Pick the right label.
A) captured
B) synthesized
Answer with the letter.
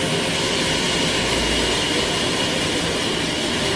A